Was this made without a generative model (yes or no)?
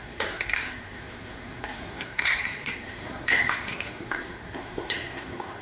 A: no